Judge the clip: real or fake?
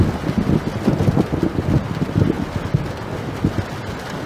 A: real